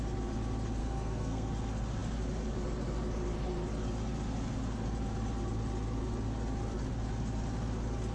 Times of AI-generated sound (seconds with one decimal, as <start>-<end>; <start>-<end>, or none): 0.8-1.5